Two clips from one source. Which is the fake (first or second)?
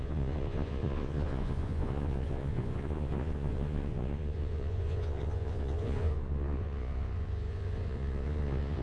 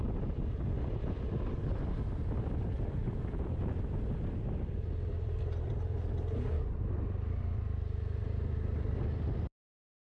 first